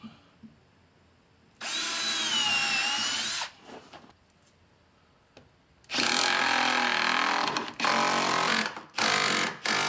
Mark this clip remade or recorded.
recorded